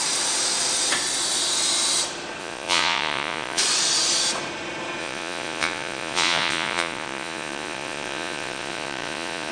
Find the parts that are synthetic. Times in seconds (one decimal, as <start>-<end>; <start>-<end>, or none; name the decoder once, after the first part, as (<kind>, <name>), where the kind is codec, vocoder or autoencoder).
2.4-3.6 (vocoder, Vocos); 5.0-9.5